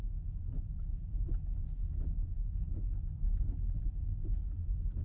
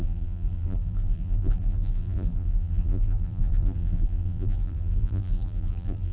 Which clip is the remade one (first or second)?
second